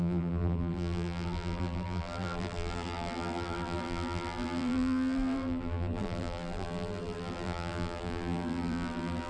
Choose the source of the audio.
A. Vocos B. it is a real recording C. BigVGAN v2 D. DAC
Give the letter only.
C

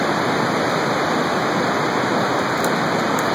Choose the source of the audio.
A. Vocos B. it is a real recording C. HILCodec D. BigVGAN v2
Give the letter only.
B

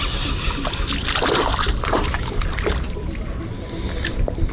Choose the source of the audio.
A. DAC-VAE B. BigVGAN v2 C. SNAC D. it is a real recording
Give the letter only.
B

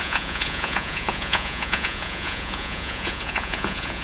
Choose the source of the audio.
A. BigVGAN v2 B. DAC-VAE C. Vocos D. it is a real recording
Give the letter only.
C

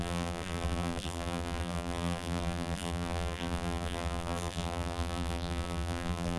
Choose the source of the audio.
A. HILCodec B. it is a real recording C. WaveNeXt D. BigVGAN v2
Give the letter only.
D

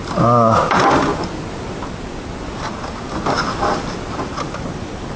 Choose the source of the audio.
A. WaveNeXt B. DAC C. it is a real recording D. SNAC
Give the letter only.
C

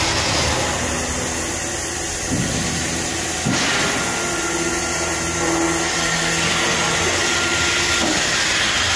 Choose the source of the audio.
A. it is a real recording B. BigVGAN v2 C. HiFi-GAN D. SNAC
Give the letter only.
A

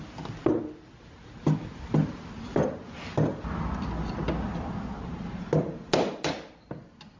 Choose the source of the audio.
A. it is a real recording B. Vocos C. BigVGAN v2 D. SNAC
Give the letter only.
A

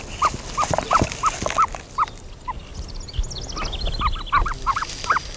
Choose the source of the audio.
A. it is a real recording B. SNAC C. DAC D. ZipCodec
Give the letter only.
A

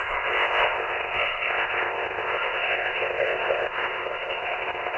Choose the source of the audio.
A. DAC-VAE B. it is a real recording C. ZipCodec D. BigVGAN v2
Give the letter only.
C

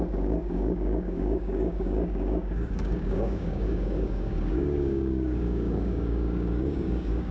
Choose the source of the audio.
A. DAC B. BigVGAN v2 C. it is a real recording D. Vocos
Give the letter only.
A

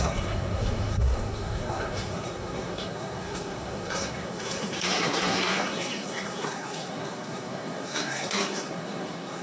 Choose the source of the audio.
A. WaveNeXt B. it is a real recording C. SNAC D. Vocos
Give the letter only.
C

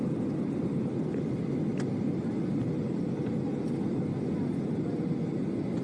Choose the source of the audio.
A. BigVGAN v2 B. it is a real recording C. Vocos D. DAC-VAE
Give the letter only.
B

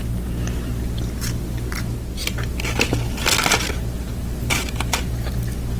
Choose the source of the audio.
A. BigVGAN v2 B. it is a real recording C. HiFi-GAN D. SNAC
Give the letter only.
B